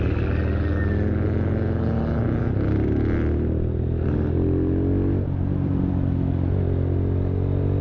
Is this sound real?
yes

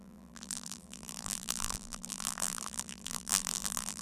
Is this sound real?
no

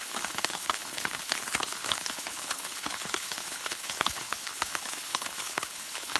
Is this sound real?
no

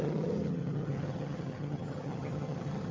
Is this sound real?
no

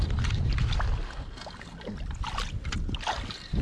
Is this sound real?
yes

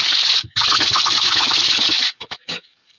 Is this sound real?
no